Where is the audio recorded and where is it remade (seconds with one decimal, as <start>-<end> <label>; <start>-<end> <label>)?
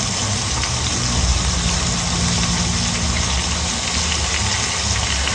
0.0-5.3 recorded